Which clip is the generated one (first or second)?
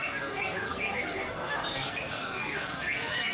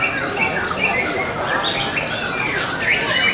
first